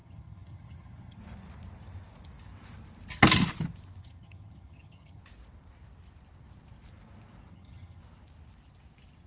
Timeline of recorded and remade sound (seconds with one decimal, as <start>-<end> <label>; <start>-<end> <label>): 0.0-1.2 remade; 1.2-4.0 recorded; 4.0-5.2 remade; 5.2-7.5 recorded; 7.5-8.0 remade; 8.0-9.3 recorded